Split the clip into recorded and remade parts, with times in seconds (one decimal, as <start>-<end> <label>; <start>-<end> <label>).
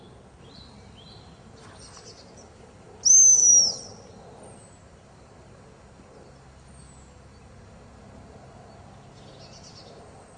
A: 0.0-10.4 recorded